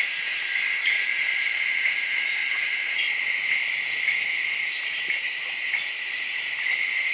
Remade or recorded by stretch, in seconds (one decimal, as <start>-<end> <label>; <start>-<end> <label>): 0.0-7.1 recorded